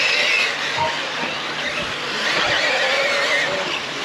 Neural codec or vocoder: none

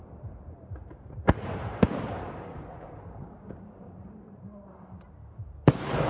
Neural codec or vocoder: vocoder, BigVGAN v2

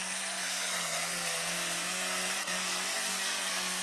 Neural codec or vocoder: codec, SNAC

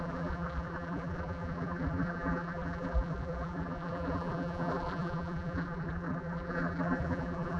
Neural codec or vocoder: vocoder, BigVGAN v2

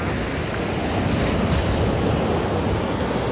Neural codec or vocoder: none